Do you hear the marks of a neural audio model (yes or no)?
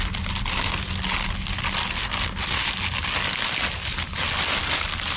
no